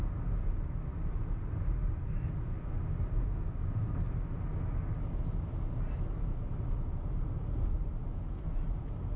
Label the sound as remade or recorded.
recorded